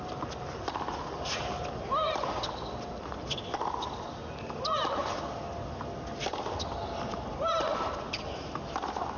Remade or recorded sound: recorded